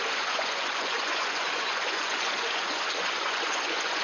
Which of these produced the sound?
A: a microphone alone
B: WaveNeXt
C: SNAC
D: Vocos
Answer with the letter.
D